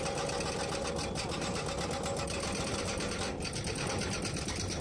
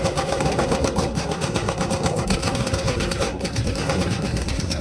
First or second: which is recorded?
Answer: first